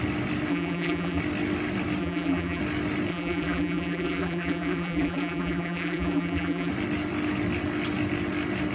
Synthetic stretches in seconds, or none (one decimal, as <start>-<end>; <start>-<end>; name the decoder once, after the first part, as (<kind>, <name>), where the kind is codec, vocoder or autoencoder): 0.5-1.2 (vocoder, BigVGAN v2); 2.0-2.6; 3.1-6.7